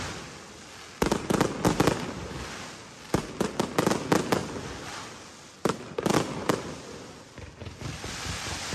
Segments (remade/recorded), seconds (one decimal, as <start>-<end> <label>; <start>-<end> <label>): 0.0-8.7 recorded